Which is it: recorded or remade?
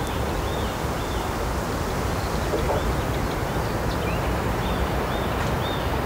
recorded